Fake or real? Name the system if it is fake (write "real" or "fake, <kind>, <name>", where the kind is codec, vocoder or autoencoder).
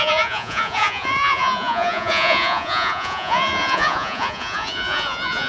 fake, vocoder, Vocos